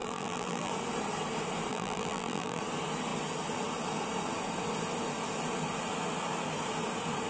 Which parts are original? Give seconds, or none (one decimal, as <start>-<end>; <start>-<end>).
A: 0.7-1.7; 2.6-7.3